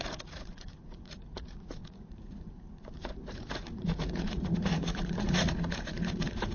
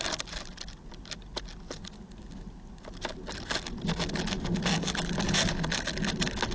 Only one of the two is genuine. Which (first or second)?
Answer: second